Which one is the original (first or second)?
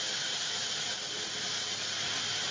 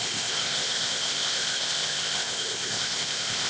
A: first